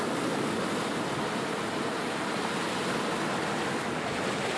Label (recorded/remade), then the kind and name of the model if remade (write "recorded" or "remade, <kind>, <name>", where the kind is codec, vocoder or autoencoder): recorded